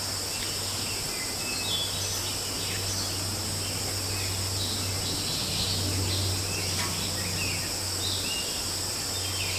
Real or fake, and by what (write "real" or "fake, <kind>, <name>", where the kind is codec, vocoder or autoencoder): real